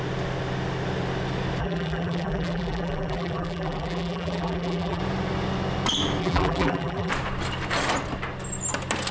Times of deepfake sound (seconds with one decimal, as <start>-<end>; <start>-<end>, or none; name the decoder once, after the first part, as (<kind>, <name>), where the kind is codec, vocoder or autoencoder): 1.6-5.0 (vocoder, BigVGAN v2); 6.2-7.1